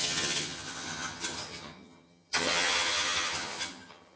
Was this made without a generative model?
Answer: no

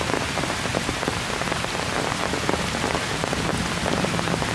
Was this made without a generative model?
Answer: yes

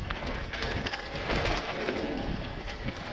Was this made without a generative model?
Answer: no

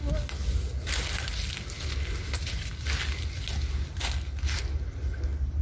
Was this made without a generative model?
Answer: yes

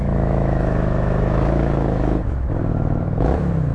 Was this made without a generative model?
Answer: no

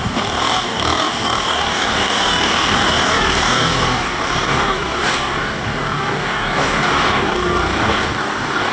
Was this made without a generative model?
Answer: no